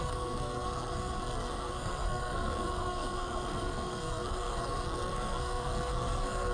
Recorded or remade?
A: remade